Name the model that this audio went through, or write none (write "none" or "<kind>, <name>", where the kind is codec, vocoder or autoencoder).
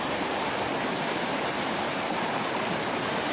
vocoder, BigVGAN v2